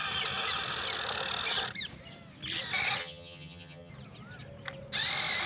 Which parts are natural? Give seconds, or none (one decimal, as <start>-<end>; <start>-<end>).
0.0-3.0; 3.9-5.5